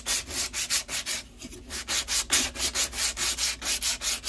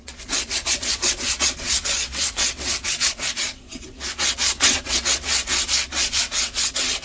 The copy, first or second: second